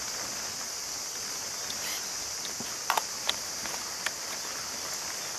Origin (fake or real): real